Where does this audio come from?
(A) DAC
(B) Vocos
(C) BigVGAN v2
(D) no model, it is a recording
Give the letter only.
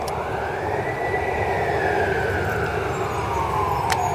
D